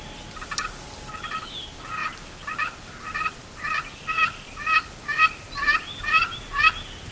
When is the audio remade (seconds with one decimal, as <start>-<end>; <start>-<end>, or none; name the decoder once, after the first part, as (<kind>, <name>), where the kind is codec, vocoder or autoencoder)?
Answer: none